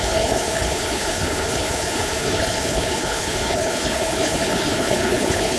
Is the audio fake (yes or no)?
yes